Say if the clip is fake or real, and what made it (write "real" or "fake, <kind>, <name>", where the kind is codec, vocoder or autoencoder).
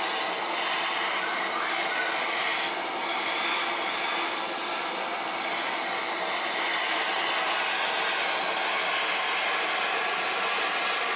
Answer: real